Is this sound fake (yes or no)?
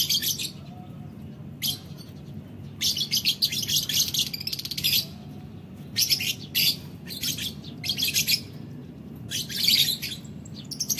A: no